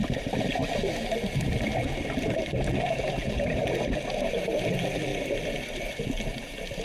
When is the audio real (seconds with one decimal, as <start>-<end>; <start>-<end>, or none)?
1.7-2.3; 2.7-4.3